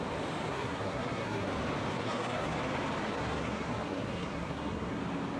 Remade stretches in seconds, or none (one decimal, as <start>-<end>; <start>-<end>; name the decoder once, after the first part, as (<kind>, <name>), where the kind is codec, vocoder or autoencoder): 0.5-1.5 (codec, SNAC); 1.9-2.6; 3.0-5.0